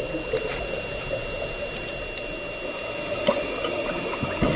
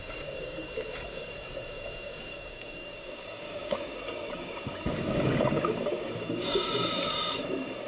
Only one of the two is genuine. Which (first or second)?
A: first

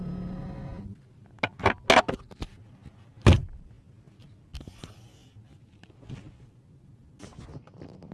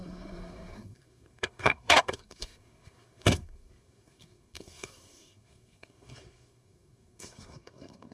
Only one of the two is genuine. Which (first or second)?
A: first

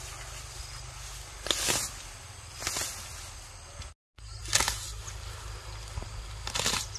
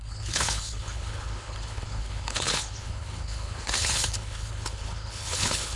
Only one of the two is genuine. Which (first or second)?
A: first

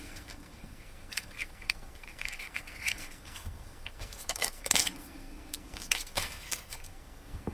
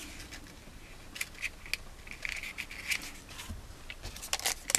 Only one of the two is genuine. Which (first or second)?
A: second